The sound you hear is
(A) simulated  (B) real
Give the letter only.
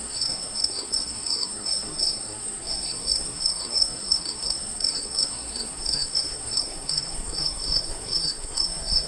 A